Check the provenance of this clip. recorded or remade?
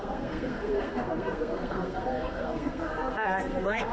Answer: remade